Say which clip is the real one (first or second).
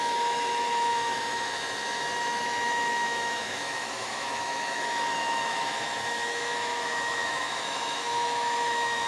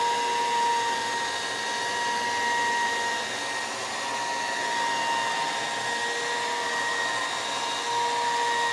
second